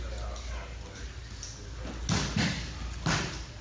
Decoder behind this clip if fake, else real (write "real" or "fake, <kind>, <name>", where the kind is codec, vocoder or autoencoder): real